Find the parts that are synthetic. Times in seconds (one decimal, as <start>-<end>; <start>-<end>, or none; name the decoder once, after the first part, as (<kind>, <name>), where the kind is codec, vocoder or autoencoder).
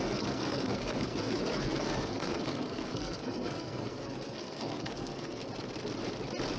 0.0-5.4 (codec, SNAC)